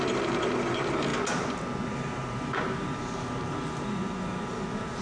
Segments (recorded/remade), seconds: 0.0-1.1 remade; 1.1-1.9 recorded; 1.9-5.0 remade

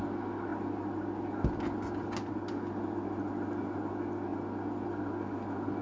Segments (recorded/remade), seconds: 0.0-5.8 recorded